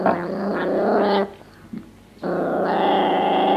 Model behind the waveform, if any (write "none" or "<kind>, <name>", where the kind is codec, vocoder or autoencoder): none